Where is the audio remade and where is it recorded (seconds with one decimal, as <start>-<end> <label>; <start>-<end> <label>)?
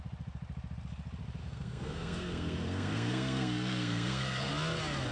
0.0-1.4 recorded; 1.4-4.5 remade; 4.5-5.1 recorded